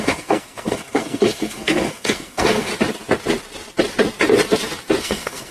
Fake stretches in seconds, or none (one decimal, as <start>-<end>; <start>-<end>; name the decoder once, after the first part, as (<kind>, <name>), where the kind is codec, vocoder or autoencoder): 0.0-2.7 (codec, SNAC); 5.0-5.5